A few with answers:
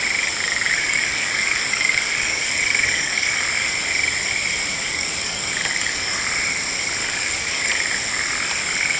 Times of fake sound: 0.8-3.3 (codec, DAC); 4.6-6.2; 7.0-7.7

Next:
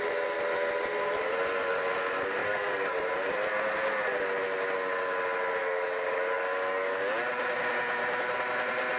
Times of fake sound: 2.4-2.9 (codec, DAC); 5.6-7.0

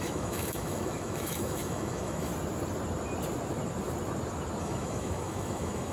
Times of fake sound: 0.0-2.3 (autoencoder, DAC-VAE); 4.6-5.9

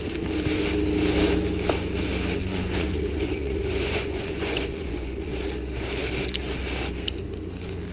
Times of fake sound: 2.4-5.3 (vocoder, Vocos)